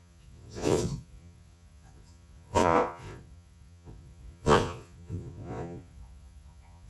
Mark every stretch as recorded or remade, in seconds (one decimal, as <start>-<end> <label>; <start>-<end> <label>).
0.0-6.9 remade